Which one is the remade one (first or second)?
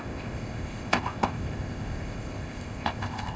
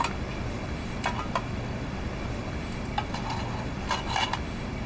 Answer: first